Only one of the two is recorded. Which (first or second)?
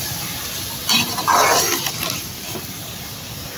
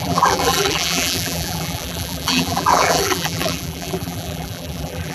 first